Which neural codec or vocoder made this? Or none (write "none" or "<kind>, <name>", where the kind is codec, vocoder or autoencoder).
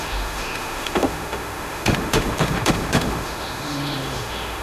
autoencoder, DAC-VAE